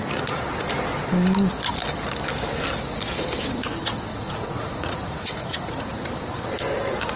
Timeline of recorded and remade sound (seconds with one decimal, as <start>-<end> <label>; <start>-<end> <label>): 0.0-4.1 recorded; 4.1-6.0 remade; 6.0-7.2 recorded